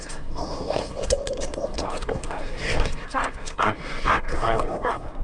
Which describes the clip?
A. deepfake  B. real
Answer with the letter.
A